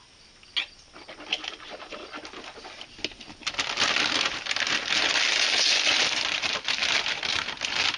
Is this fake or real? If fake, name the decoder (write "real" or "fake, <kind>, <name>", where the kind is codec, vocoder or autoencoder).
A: real